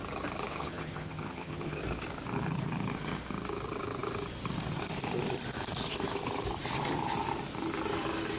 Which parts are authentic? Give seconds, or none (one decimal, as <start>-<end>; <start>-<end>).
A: 0.0-0.5; 1.8-8.4